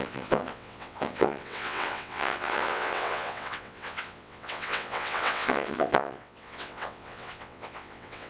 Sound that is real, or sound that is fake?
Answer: fake